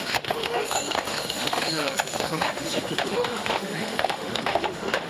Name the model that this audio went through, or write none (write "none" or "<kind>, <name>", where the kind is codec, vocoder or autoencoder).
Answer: autoencoder, DAC-VAE